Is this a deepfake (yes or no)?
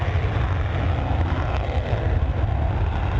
no